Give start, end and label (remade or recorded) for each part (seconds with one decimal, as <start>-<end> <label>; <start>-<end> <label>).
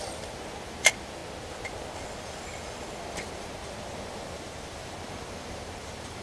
0.0-1.2 remade; 1.2-3.3 recorded; 3.3-6.2 remade